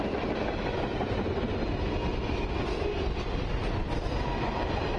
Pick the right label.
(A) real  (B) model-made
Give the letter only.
A